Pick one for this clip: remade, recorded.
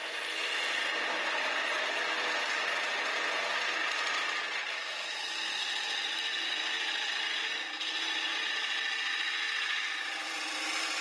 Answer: recorded